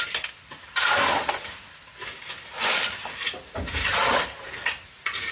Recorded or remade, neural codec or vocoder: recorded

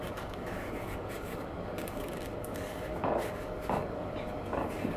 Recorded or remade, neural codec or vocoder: remade, codec, DAC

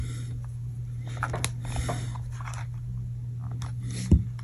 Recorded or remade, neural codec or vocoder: recorded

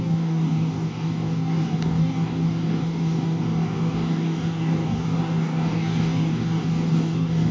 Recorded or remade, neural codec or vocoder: remade, codec, DAC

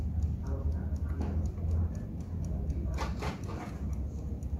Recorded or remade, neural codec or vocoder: recorded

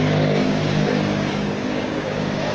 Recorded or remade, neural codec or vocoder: remade, codec, DAC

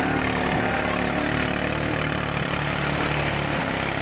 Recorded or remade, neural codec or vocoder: recorded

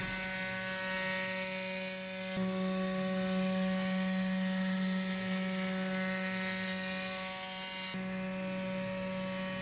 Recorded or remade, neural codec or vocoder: recorded